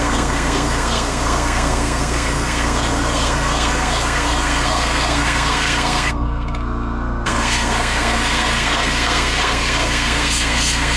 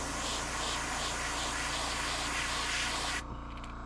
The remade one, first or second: first